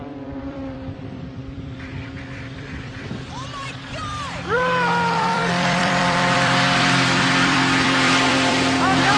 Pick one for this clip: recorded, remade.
remade